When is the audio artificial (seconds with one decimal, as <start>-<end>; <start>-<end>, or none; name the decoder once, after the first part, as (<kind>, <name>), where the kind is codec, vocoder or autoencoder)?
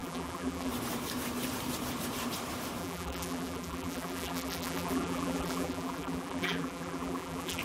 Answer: 0.0-0.7 (vocoder, BigVGAN v2); 2.8-7.6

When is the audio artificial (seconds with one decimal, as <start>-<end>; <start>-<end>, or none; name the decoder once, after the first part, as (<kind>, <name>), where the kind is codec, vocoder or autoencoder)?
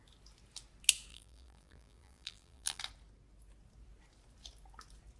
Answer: 1.1-2.8 (vocoder, BigVGAN v2)